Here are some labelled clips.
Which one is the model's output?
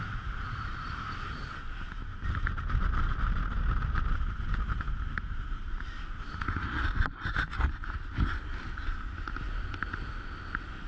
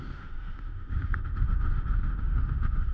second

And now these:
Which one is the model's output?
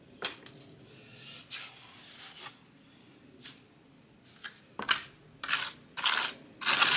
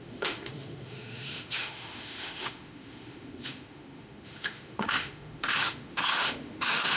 second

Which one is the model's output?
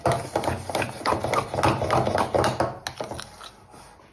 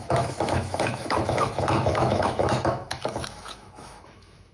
second